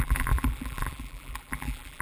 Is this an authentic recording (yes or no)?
no